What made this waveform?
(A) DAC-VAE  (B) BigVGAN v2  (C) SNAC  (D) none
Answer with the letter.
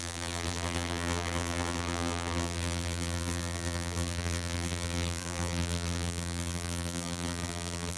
B